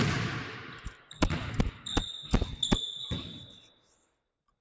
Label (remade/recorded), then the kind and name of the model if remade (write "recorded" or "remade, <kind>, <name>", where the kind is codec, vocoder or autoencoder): recorded